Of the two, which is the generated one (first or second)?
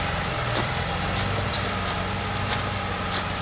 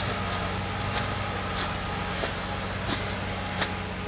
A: first